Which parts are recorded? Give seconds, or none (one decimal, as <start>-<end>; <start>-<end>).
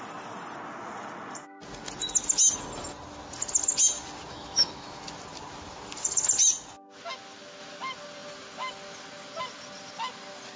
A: 0.0-4.3; 5.0-10.6